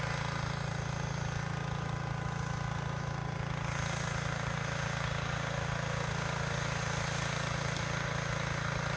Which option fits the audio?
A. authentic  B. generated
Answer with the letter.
A